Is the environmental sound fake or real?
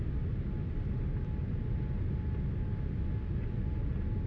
real